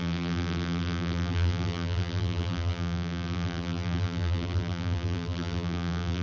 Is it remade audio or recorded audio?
remade